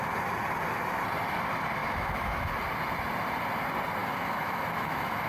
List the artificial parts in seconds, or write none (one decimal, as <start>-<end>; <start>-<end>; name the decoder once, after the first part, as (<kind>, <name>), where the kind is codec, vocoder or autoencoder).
1.8-2.5 (autoencoder, DAC-VAE); 4.0-5.3